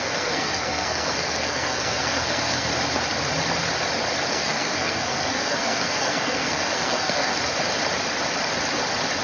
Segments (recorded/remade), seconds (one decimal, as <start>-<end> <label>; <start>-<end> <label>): 0.0-2.7 remade; 2.7-4.3 recorded; 4.3-7.3 remade; 7.3-9.2 recorded